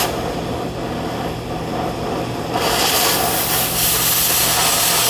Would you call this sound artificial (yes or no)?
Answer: no